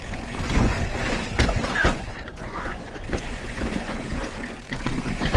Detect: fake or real fake